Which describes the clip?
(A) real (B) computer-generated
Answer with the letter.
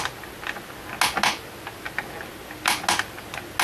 A